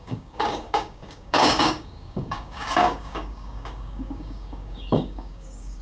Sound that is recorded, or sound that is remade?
remade